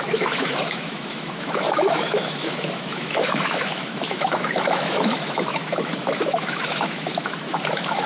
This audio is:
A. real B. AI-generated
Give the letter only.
B